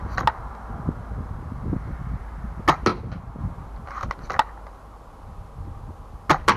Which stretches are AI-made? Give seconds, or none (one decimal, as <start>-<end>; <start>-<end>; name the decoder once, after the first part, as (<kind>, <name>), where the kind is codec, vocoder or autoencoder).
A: none